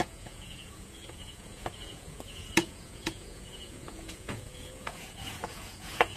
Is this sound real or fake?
fake